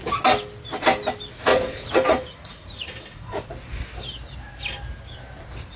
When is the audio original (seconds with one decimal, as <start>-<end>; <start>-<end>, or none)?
0.0-1.5; 3.5-5.8